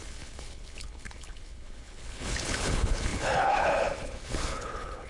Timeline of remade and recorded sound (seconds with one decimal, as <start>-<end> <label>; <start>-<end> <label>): 0.0-5.1 remade